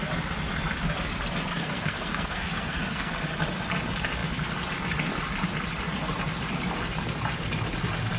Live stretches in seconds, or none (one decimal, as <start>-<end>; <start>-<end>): 0.0-1.6; 3.1-8.2